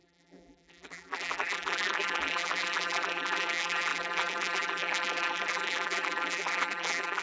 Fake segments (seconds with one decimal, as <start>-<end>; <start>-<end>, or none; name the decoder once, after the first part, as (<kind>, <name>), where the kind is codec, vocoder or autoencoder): 0.0-7.2 (vocoder, BigVGAN v2)

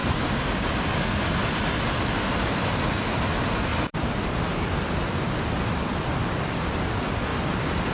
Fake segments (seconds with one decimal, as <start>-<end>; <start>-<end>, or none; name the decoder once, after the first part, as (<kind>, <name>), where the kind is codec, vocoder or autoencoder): 0.0-1.0 (vocoder, BigVGAN v2); 3.7-5.2; 7.3-7.9